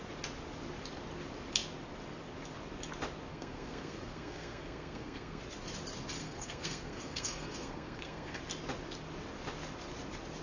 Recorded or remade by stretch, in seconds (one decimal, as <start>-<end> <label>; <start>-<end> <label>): 0.0-3.3 recorded; 3.3-5.4 remade; 5.4-6.2 recorded; 6.2-8.4 remade; 8.4-10.4 recorded